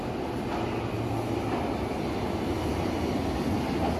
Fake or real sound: real